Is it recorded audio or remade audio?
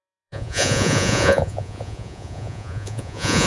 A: remade